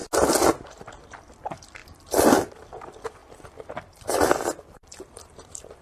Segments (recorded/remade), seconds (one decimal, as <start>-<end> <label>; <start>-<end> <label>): 0.0-1.2 recorded; 1.2-3.2 remade; 3.2-3.7 recorded; 3.7-5.8 remade